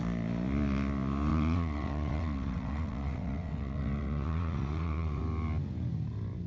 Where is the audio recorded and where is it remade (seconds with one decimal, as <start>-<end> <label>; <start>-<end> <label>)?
0.0-1.3 recorded; 1.3-5.2 remade; 5.2-6.5 recorded